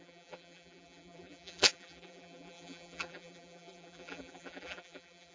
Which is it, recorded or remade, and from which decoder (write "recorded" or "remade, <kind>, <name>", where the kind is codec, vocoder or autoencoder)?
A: remade, vocoder, BigVGAN v2